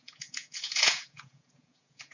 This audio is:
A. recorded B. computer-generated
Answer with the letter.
B